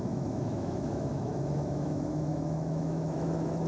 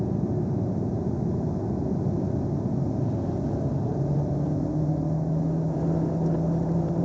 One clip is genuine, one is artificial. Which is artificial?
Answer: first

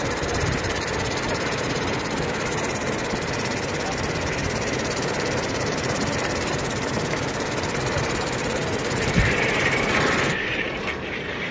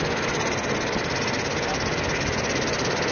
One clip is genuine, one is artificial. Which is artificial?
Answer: first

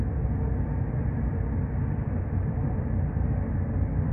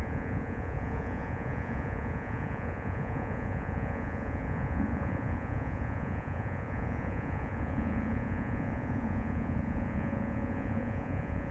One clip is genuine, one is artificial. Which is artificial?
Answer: second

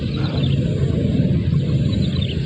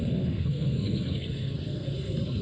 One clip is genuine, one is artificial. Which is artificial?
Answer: second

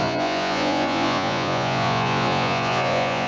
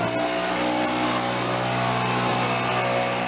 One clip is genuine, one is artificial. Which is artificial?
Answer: first